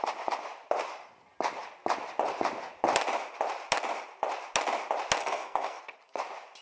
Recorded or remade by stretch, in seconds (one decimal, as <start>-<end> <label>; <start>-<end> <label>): 0.0-5.2 recorded; 5.2-5.8 remade; 5.8-6.6 recorded